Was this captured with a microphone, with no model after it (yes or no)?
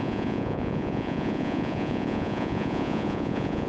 no